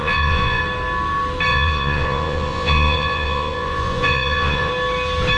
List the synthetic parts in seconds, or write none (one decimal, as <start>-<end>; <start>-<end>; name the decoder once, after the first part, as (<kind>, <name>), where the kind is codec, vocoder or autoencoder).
0.0-0.6 (vocoder, Vocos); 1.5-4.7